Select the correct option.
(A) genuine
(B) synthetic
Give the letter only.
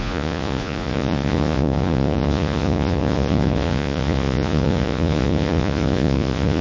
B